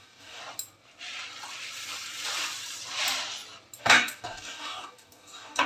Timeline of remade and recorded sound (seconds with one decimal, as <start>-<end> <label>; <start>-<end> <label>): 0.0-0.4 remade; 0.4-3.8 recorded; 3.8-5.7 remade